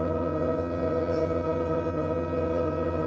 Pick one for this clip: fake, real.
fake